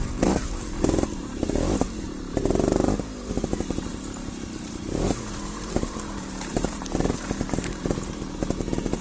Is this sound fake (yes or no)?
yes